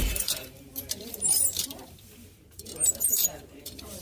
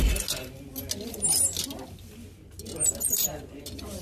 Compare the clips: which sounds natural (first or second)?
second